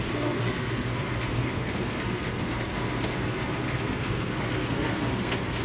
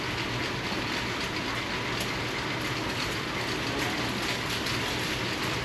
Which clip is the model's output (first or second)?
first